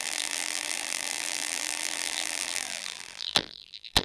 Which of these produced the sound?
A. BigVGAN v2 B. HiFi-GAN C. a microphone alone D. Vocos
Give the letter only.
A